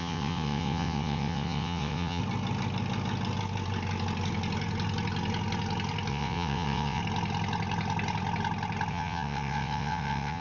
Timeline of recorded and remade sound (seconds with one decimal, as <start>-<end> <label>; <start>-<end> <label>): 0.0-2.2 remade; 2.2-6.1 recorded; 6.1-7.0 remade; 7.0-8.9 recorded; 8.9-10.4 remade